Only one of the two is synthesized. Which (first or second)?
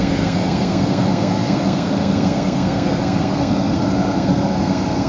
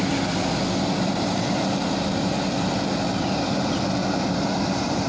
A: first